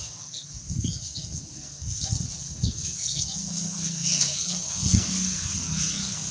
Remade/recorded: remade